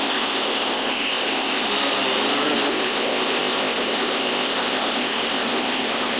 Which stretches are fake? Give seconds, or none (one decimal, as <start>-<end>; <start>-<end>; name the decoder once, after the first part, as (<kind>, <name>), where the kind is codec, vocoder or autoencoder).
0.0-1.7 (codec, ZipCodec); 2.7-6.2